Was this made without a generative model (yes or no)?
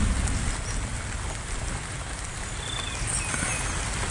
yes